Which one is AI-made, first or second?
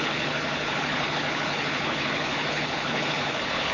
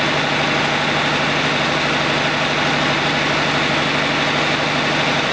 first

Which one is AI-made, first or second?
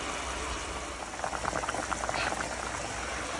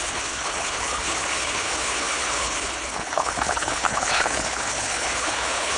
second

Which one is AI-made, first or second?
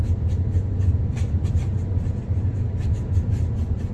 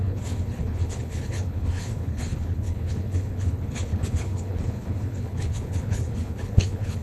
second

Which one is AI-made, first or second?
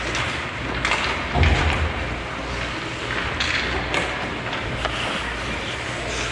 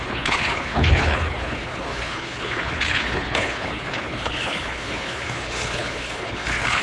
second